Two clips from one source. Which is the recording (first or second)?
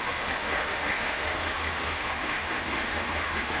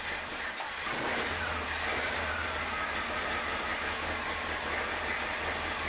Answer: second